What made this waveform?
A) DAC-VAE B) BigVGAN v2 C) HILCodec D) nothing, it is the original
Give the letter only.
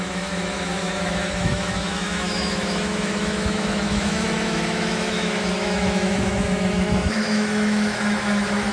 A